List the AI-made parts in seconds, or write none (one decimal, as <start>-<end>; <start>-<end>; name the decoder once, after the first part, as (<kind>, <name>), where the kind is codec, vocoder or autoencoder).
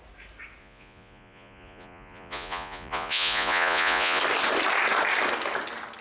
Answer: 0.6-4.2 (vocoder, Vocos)